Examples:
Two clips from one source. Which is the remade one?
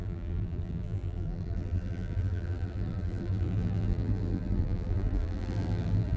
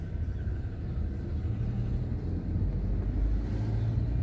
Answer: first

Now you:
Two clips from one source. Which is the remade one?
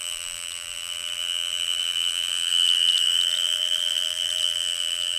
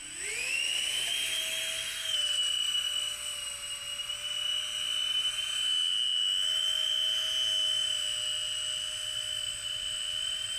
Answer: first